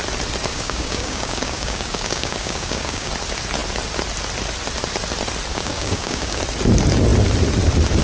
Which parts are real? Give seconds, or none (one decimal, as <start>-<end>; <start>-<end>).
0.0-0.5; 3.1-5.5; 6.4-8.0

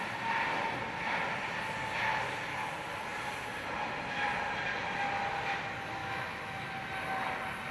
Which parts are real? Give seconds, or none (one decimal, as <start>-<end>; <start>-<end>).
0.0-6.0; 6.7-7.7

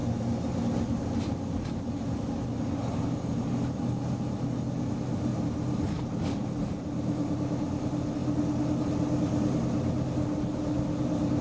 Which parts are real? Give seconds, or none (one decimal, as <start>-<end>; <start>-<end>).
0.0-5.3; 6.0-11.4

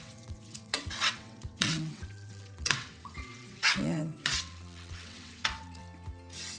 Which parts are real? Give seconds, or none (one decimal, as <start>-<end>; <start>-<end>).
5.8-6.6